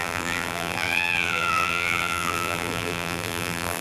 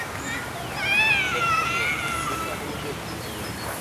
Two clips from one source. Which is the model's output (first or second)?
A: first